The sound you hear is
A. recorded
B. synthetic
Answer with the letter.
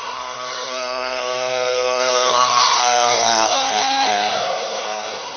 B